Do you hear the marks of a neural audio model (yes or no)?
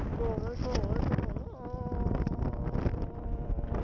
no